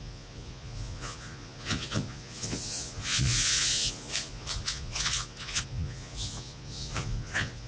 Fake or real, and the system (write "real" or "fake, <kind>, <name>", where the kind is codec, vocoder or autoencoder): fake, vocoder, Vocos